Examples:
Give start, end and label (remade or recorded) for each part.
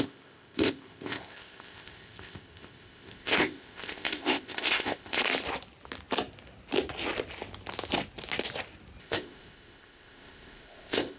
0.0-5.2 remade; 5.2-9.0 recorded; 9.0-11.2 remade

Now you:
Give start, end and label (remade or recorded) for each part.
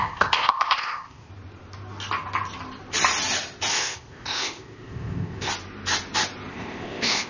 0.0-1.3 remade; 1.3-3.7 recorded; 3.7-5.5 remade; 5.5-6.5 recorded; 6.5-7.3 remade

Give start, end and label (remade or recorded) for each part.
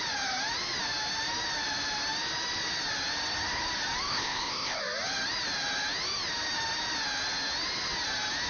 0.0-4.1 recorded; 4.1-4.8 remade; 4.8-8.5 recorded